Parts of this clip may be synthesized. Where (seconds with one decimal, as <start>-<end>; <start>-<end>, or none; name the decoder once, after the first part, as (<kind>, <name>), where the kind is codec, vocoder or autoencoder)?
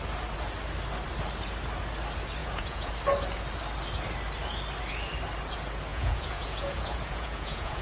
2.4-2.9 (vocoder, Vocos); 5.9-7.8